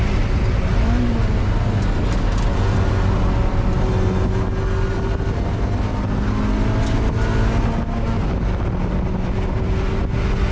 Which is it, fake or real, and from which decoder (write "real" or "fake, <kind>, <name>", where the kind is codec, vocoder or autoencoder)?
real